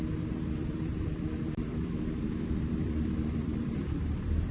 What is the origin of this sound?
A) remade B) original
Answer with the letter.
A